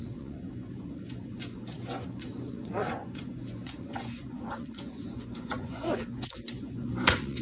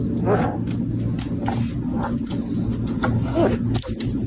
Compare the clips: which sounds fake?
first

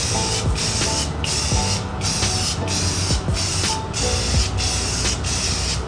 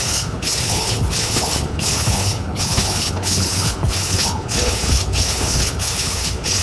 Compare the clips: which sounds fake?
second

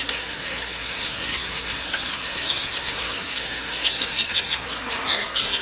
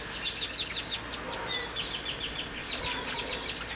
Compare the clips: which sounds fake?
first